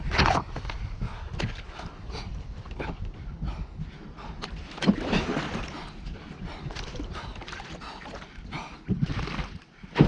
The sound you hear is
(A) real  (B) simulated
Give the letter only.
A